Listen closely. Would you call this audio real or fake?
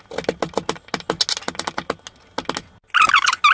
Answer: real